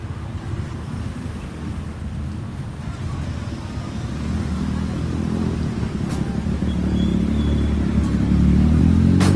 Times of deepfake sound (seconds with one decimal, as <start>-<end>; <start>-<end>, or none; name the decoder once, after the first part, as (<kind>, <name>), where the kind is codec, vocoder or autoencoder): none